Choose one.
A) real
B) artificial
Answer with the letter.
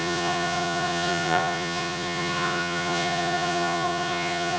B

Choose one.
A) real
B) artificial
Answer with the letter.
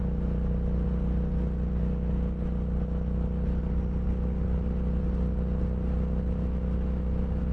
A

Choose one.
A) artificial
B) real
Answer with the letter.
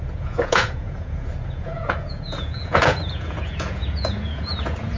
A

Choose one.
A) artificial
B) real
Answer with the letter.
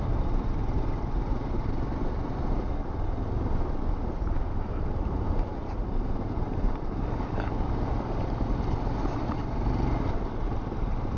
B